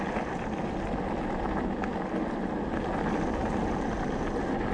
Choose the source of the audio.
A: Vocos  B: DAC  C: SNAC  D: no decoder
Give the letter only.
D